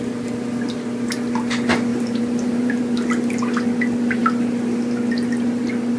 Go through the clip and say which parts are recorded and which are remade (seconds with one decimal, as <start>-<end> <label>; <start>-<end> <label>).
0.0-1.9 recorded; 1.9-2.8 remade; 2.8-6.0 recorded